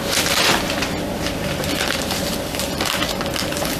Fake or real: real